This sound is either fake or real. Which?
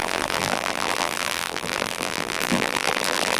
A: fake